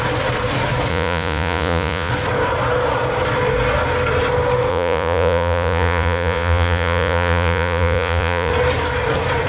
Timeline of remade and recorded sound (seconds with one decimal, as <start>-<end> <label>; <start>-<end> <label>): 0.0-0.9 recorded; 0.9-2.1 remade; 2.1-4.7 recorded; 4.7-8.5 remade; 8.5-9.5 recorded